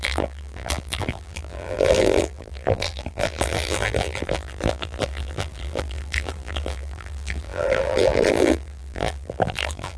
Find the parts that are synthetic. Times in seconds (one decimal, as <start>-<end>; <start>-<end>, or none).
0.0-10.0